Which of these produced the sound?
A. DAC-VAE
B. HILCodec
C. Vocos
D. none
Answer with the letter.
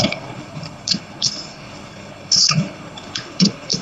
B